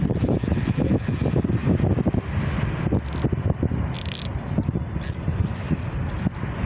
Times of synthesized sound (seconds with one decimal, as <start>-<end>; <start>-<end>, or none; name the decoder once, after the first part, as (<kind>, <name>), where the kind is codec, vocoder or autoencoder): none